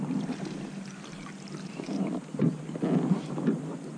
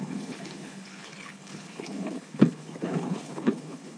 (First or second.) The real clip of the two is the first